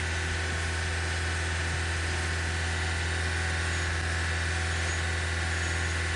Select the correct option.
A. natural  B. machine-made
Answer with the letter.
A